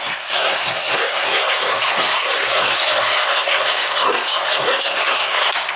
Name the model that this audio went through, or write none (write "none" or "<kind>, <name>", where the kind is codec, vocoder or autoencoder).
codec, SNAC